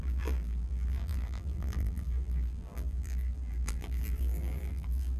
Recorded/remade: remade